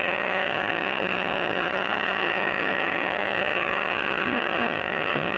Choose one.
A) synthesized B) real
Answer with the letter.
A